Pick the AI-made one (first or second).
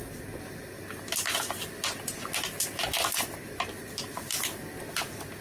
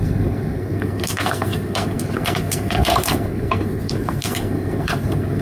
second